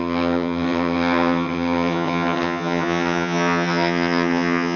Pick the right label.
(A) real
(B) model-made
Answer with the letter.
B